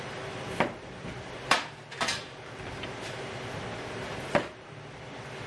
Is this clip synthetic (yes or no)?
yes